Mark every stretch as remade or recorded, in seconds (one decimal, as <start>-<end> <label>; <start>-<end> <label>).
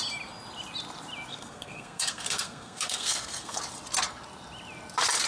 0.0-1.3 recorded; 1.3-3.6 remade; 3.6-5.3 recorded